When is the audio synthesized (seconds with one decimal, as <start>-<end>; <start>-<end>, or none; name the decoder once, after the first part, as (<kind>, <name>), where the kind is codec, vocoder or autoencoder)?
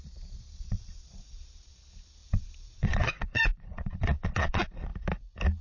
0.0-4.9 (vocoder, Vocos)